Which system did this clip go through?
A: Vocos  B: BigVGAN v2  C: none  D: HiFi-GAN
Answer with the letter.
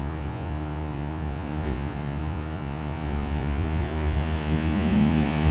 A